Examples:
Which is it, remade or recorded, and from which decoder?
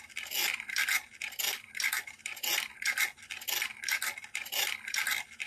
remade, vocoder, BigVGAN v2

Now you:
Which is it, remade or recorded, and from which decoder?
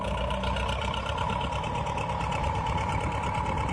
remade, vocoder, BigVGAN v2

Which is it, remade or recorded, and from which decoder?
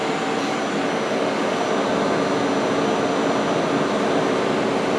recorded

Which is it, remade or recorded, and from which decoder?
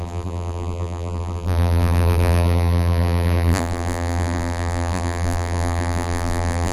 remade, vocoder, BigVGAN v2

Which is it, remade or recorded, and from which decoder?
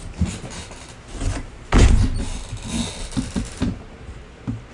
recorded